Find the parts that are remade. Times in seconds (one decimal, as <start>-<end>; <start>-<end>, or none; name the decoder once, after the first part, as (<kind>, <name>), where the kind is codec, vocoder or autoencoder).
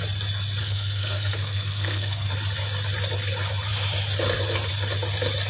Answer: 0.6-2.3 (codec, SNAC)